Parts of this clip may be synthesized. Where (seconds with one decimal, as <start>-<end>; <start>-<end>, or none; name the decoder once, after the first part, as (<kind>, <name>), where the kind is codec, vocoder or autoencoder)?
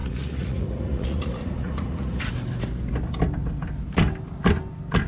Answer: 0.0-2.3 (vocoder, Vocos)